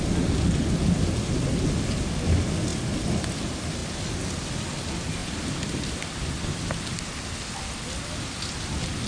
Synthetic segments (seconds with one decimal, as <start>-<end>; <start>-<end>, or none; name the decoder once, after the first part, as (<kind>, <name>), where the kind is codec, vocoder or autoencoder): none